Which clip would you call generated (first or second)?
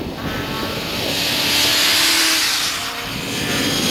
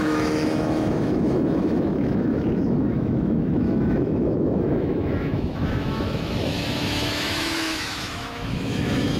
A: second